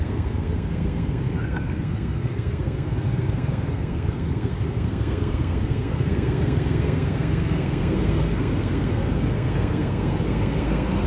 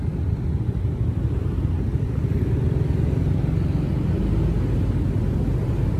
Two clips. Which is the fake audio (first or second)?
first